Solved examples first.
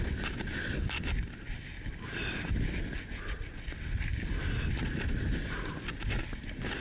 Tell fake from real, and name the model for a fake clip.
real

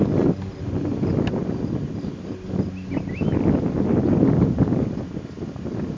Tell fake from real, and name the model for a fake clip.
real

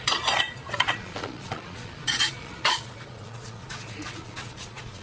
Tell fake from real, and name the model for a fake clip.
fake, vocoder, Vocos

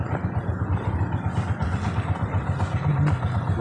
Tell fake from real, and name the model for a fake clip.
real